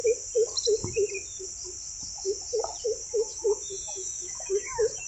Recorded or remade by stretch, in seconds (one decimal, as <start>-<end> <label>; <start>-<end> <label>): 0.0-3.1 recorded; 3.1-5.1 remade